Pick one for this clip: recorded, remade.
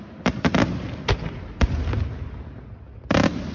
recorded